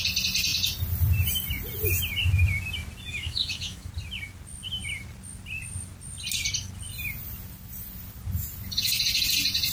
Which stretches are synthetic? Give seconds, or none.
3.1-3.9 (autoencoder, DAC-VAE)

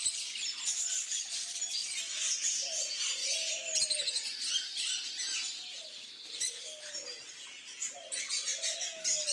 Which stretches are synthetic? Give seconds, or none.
none

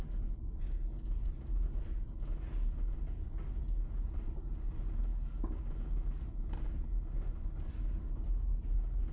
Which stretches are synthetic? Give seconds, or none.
none

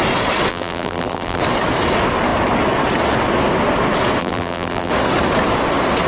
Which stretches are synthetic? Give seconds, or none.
0.5-1.4 (vocoder, BigVGAN v2); 4.2-4.9

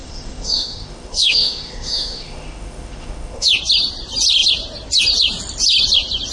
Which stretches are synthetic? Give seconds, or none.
0.0-3.5 (autoencoder, DAC-VAE)